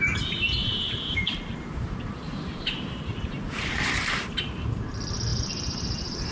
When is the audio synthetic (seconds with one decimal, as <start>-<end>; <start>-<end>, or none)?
0.6-4.4; 5.3-6.3